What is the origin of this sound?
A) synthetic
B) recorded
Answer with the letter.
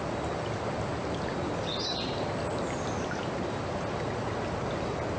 B